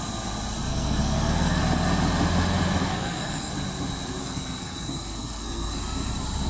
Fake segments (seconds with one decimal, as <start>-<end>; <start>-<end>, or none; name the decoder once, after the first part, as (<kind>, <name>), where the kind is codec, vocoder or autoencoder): 0.7-1.6 (codec, SNAC); 2.8-3.5; 4.2-5.8